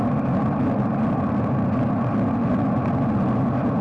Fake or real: real